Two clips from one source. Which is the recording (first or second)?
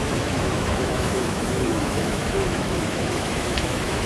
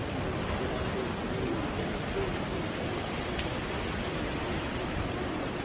second